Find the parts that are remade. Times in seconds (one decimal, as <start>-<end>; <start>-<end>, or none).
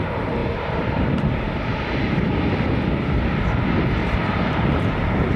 0.4-1.3; 4.0-5.4